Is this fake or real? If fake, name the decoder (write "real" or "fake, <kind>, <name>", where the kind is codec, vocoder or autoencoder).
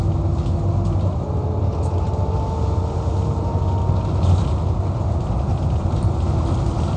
real